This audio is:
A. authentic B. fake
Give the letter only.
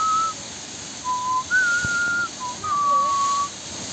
A